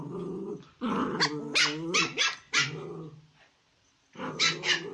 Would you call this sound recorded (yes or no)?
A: yes